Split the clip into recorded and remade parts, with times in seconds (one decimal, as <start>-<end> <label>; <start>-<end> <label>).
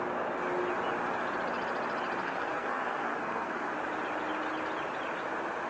0.0-2.2 recorded; 2.2-3.7 remade; 3.7-5.7 recorded